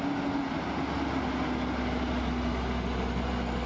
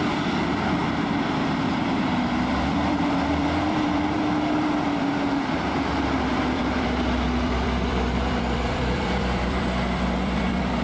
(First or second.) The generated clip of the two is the second